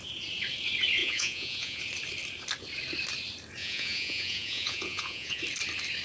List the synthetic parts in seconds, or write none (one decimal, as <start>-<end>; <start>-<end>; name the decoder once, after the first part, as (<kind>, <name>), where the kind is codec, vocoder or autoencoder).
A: 1.0-1.8 (vocoder, Vocos); 3.6-5.4